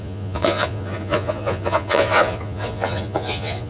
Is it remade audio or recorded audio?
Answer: remade